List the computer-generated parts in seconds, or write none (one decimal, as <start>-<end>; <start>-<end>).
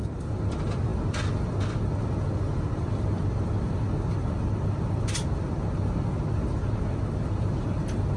none